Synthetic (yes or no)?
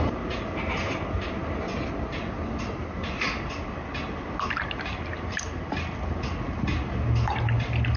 no